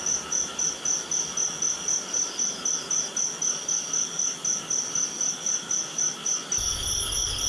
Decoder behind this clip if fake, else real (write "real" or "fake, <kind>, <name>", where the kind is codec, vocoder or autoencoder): real